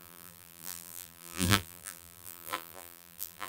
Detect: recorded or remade remade